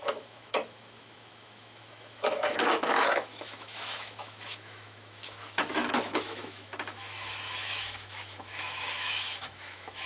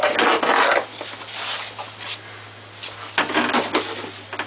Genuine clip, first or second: second